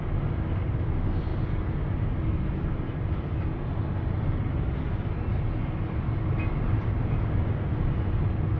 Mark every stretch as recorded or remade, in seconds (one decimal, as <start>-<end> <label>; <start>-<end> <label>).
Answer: 0.0-8.6 recorded